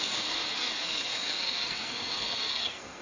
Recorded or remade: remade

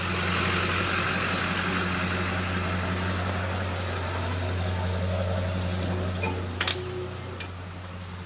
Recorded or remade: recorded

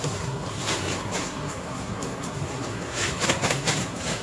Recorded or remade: remade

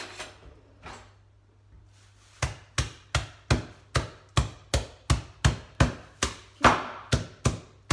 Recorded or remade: recorded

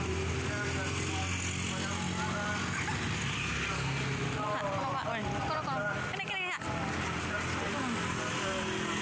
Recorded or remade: recorded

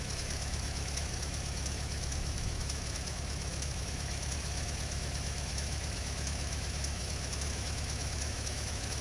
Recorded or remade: remade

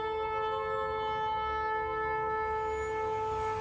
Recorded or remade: recorded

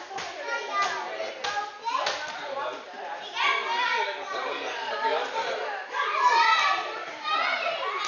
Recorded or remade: recorded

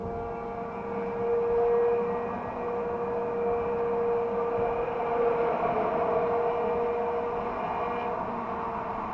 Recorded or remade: recorded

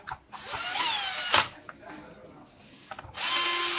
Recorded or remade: recorded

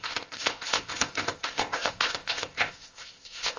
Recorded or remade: remade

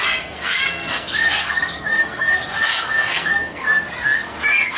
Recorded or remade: remade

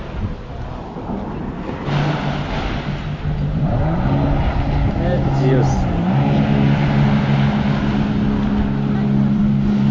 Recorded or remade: recorded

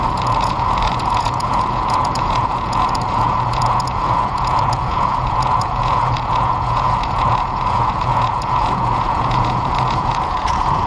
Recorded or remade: remade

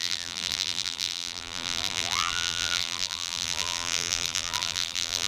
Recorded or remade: remade